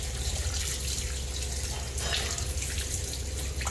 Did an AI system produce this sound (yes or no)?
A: no